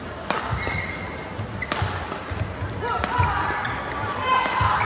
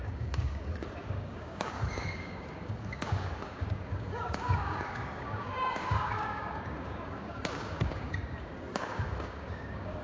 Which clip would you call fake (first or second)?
second